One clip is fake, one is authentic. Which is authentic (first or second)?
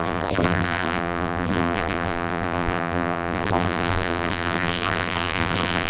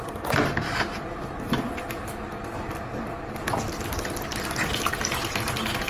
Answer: second